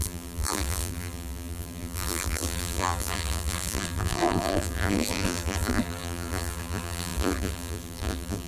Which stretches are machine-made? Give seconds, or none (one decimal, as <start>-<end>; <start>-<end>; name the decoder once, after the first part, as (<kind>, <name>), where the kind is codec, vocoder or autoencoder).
0.0-8.5 (vocoder, BigVGAN v2)